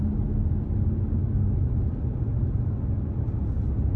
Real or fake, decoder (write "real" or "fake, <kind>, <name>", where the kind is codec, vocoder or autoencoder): real